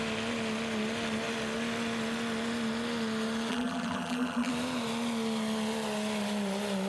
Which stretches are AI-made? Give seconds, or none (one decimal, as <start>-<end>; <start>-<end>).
3.5-4.5